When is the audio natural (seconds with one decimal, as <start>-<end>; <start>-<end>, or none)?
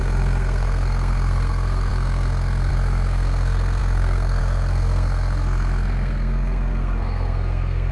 none